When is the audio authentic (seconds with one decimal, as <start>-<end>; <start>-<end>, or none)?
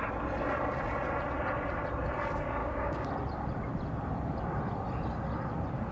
0.0-2.6; 3.1-5.9